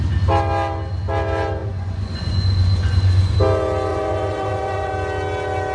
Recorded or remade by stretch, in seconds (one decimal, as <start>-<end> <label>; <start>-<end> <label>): 0.0-1.6 recorded; 1.6-3.3 remade; 3.3-3.9 recorded; 3.9-4.9 remade; 4.9-5.7 recorded